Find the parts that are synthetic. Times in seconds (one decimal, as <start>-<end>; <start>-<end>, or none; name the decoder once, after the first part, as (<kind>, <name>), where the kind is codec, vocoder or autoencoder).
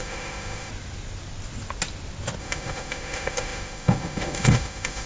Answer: 0.0-0.7 (autoencoder, DAC-VAE); 2.4-5.1